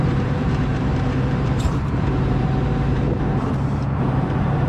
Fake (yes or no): yes